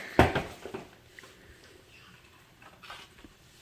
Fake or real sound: fake